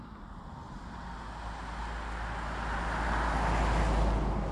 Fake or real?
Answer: real